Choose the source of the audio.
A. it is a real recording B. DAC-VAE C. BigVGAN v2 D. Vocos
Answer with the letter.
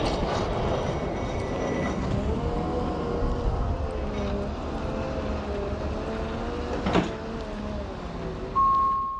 A